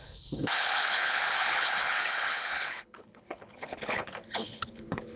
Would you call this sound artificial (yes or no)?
yes